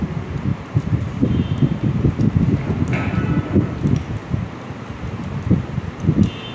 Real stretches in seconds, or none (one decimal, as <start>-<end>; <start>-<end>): 0.0-0.5; 3.2-4.2; 4.8-6.5